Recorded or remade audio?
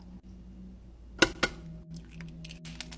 recorded